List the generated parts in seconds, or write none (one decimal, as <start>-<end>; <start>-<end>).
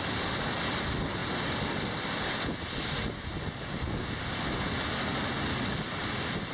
none